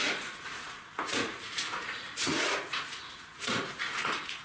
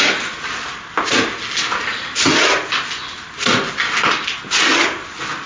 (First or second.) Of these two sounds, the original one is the second